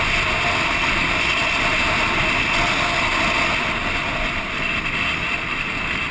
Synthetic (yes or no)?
no